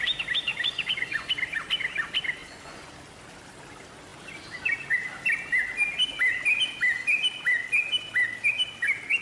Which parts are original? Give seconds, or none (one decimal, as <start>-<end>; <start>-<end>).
0.0-0.5; 1.3-2.4; 2.9-9.2